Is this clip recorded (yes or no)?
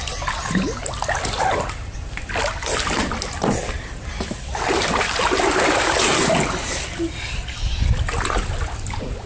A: yes